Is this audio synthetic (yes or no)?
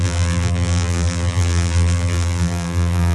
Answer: yes